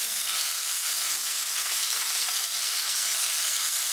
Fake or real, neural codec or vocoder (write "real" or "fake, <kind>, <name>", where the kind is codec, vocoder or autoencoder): fake, codec, SNAC